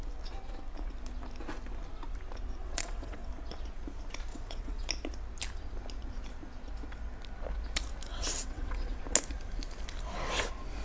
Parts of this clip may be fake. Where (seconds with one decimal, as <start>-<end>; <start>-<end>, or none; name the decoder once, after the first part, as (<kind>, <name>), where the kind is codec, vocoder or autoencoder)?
2.6-3.3 (vocoder, WaveNeXt); 4.3-4.9; 8.1-9.0